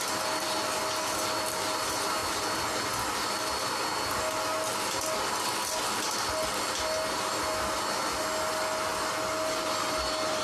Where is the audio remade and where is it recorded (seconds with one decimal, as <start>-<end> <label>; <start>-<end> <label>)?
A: 0.0-10.4 recorded